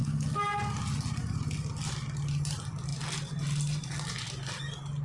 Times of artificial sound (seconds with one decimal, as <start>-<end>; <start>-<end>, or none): none

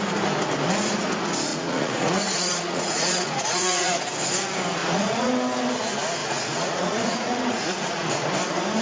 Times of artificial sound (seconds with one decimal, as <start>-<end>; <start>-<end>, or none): 1.5-3.9; 4.8-5.3; 6.2-8.3

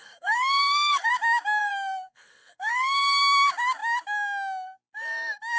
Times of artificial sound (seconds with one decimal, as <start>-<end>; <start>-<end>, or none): 0.0-1.1; 1.6-3.2

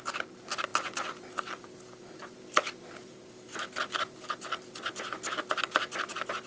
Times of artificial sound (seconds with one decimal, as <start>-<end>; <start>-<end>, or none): none

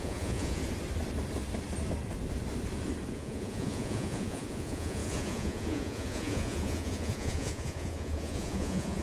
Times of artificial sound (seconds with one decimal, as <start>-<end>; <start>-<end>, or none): 0.0-0.6; 3.1-9.0

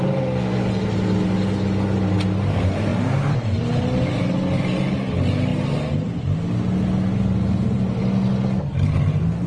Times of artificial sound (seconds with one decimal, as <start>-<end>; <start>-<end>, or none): none